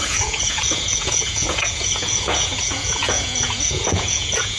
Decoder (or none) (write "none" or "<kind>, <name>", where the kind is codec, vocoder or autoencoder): vocoder, Vocos